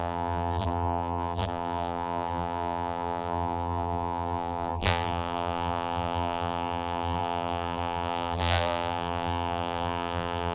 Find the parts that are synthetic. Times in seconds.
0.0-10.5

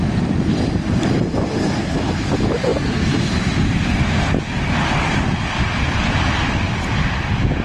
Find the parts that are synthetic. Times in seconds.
none